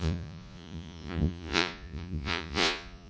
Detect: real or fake fake